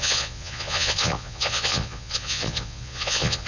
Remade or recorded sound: remade